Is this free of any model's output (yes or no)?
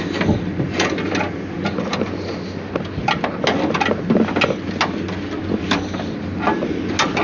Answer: yes